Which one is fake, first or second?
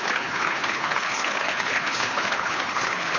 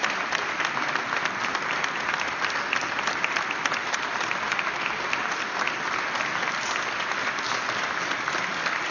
first